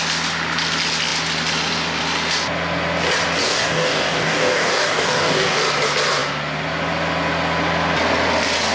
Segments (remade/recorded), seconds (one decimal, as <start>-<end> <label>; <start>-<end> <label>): 0.0-3.4 recorded; 3.4-5.6 remade; 5.6-8.7 recorded

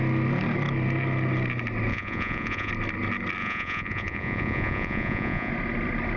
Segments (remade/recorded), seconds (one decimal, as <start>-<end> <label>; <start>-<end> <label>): 0.0-1.9 recorded; 1.9-2.7 remade; 2.7-3.4 recorded; 3.4-5.5 remade; 5.5-6.2 recorded

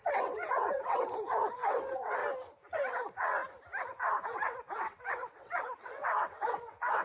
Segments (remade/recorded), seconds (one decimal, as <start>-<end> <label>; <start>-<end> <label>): 0.0-2.2 remade; 2.2-2.9 recorded; 2.9-3.4 remade; 3.4-3.9 recorded; 3.9-7.0 remade

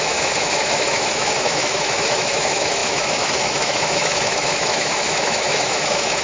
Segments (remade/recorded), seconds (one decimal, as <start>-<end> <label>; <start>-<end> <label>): 0.0-6.2 remade

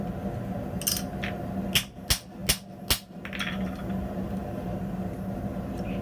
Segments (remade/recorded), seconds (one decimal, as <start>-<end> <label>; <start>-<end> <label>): 0.0-6.0 recorded

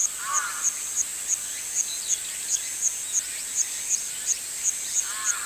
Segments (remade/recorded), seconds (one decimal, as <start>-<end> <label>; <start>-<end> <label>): 0.0-5.5 recorded

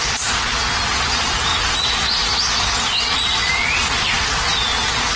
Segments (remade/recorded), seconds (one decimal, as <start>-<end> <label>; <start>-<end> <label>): 0.0-5.2 recorded

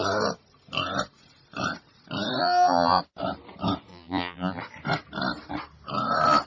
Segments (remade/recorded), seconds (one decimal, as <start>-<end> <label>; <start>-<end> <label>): 0.0-2.4 recorded; 2.4-3.0 remade; 3.0-3.9 recorded; 3.9-4.6 remade; 4.6-6.5 recorded